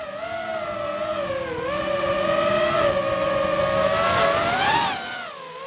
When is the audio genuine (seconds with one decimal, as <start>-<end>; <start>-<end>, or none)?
0.0-5.7